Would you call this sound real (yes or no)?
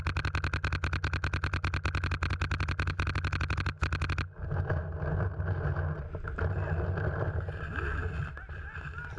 yes